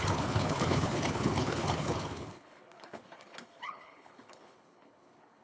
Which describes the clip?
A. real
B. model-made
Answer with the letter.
B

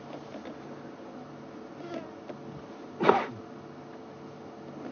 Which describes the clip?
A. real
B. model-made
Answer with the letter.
A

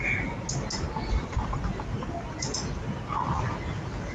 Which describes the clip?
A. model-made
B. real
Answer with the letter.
B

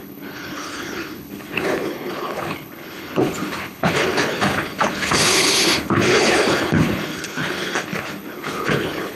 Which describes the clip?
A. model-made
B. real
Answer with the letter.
A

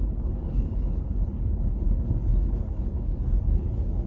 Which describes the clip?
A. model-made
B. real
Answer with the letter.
A